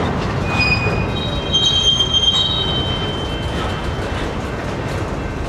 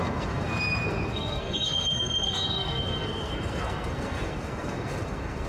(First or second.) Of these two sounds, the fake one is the second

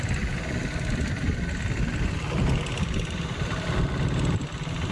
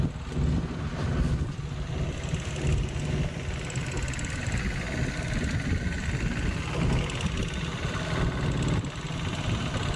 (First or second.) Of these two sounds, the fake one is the first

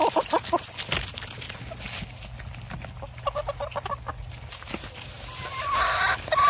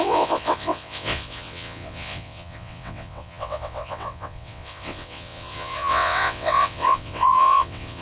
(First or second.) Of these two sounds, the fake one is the second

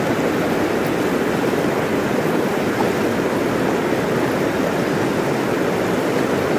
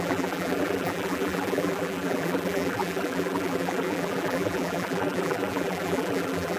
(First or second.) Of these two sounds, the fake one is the second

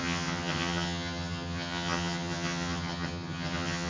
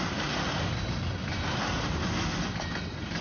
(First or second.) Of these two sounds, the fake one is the first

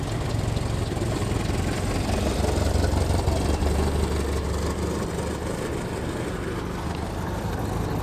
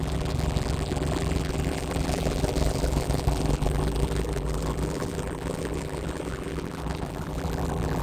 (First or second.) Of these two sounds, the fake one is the second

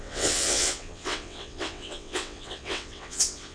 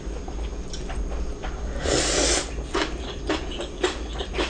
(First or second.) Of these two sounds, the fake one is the first